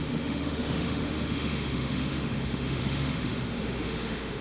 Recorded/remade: remade